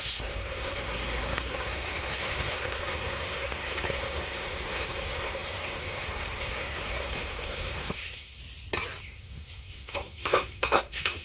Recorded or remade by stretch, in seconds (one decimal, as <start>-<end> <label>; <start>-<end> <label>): 0.0-8.4 remade; 8.4-9.0 recorded; 9.0-11.2 remade